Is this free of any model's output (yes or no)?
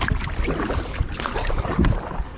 yes